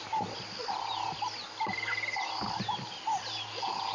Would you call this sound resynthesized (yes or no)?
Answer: no